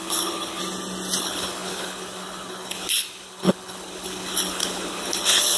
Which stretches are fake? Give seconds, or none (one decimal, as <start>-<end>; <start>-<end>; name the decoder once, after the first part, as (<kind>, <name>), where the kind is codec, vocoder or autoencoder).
0.0-0.6 (codec, HILCodec); 1.2-5.6